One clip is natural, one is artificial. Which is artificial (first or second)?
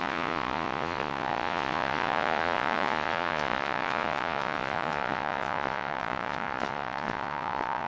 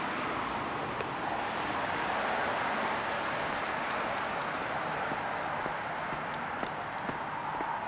first